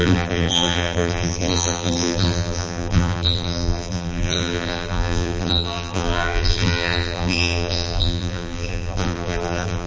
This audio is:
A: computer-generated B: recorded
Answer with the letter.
A